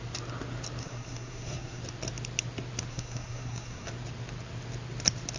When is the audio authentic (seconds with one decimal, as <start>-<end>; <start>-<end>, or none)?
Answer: 0.0-0.8; 1.8-2.9; 3.9-5.4